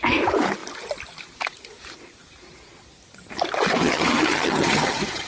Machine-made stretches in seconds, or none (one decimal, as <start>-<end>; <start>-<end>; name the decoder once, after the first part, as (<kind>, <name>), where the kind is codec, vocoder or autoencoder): 3.8-5.3 (vocoder, HiFi-GAN)